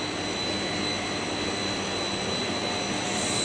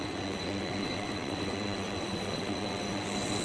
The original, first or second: first